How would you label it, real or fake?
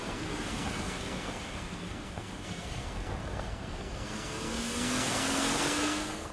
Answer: fake